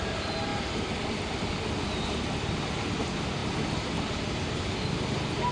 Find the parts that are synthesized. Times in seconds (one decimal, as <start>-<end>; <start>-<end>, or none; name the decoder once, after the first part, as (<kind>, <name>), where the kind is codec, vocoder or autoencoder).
none